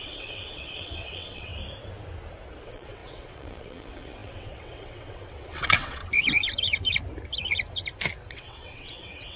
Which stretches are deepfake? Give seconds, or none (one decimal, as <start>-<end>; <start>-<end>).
0.0-1.5; 2.6-6.0; 8.3-9.4